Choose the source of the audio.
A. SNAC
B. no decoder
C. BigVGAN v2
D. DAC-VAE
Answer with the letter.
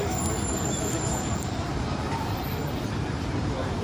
C